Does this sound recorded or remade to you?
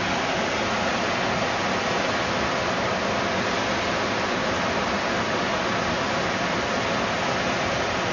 recorded